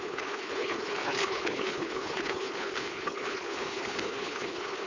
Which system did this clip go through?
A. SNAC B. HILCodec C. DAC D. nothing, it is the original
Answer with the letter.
B